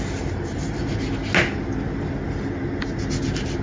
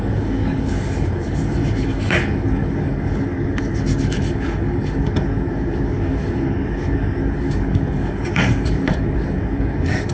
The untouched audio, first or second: first